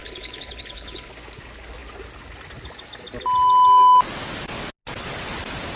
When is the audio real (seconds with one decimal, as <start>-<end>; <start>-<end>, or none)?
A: 1.1-5.8